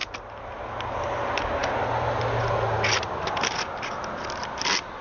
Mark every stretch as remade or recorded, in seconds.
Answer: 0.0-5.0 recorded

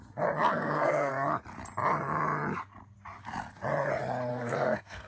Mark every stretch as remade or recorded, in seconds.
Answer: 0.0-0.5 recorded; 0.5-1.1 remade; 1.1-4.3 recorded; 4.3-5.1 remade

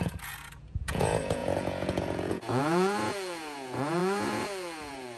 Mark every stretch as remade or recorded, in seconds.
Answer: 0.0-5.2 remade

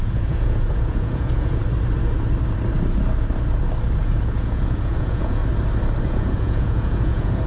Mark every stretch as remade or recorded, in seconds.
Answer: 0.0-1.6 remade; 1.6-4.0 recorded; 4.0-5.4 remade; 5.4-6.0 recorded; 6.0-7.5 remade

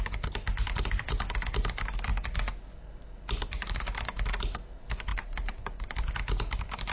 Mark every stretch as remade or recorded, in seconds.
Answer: 0.0-5.1 recorded; 5.1-6.1 remade; 6.1-6.9 recorded

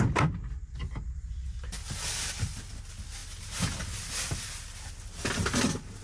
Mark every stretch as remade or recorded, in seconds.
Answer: 0.0-6.0 recorded